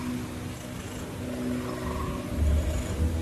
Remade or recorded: recorded